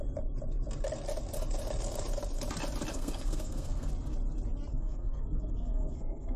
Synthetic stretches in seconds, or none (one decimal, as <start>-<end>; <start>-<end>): 2.9-3.9; 4.7-6.4